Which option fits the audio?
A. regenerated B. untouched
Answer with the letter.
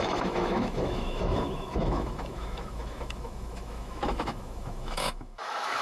A